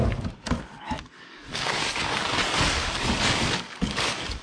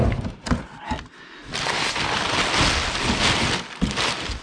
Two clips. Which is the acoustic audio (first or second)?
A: second